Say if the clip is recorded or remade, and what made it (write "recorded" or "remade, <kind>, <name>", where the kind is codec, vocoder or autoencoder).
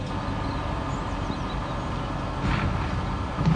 recorded